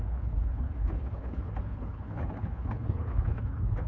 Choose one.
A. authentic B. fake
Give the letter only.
B